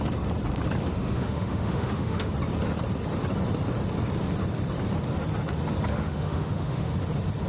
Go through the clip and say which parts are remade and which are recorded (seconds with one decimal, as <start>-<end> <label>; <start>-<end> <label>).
0.0-0.9 recorded; 0.9-2.3 remade; 2.3-5.9 recorded; 5.9-6.9 remade; 6.9-7.5 recorded